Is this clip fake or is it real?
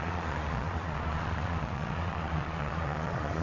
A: fake